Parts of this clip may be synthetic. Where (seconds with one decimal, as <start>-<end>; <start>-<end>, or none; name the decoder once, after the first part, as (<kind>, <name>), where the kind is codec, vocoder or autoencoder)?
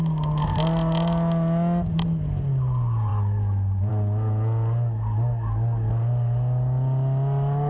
none